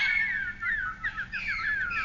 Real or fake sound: real